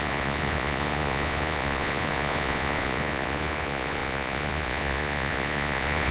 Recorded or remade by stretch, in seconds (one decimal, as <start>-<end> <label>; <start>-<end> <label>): 0.0-6.1 remade